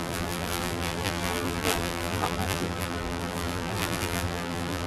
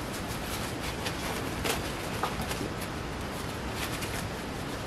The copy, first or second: first